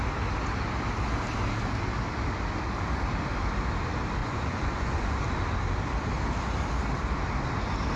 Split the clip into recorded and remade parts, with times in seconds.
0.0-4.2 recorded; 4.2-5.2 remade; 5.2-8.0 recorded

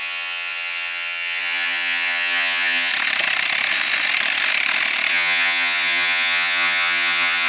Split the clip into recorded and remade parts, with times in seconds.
0.0-2.9 remade; 2.9-5.1 recorded; 5.1-7.5 remade

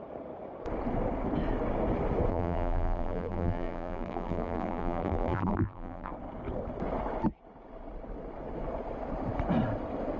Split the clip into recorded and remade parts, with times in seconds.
0.0-2.3 recorded; 2.3-6.1 remade; 6.1-10.2 recorded

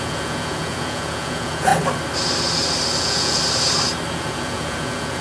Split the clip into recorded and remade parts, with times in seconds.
0.0-1.7 remade; 1.7-3.0 recorded; 3.0-3.4 remade; 3.4-4.1 recorded; 4.1-5.2 remade

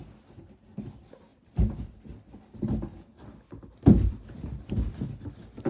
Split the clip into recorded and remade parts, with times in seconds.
0.0-1.3 recorded; 1.3-4.7 remade; 4.7-5.7 recorded

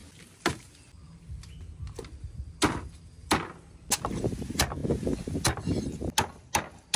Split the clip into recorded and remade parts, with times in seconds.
0.0-7.0 recorded